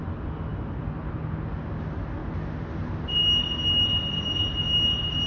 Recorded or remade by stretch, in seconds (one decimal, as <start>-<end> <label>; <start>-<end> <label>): 0.0-5.3 recorded